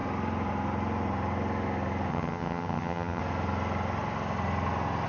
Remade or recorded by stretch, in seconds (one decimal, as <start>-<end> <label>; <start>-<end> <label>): 0.0-2.1 recorded; 2.1-3.2 remade; 3.2-5.1 recorded